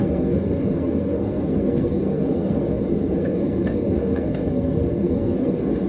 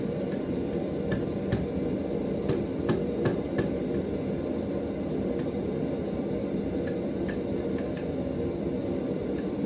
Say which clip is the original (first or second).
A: second